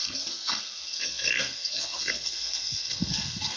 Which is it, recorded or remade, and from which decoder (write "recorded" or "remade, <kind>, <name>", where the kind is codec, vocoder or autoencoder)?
remade, codec, SNAC